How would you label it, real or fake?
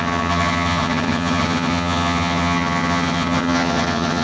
fake